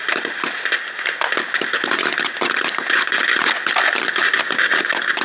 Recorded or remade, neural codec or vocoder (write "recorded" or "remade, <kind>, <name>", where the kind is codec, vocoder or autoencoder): recorded